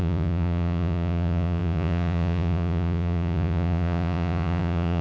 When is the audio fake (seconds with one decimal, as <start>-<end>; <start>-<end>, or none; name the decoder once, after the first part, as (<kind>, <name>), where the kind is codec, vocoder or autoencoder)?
0.0-5.0 (vocoder, Vocos)